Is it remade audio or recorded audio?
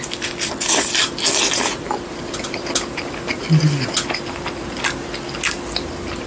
recorded